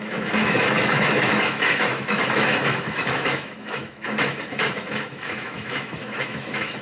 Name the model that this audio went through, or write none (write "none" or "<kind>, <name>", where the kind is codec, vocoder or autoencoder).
autoencoder, DAC-VAE